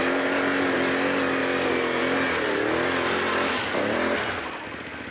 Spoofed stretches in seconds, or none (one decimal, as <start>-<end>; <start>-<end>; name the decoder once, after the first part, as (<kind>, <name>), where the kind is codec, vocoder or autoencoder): none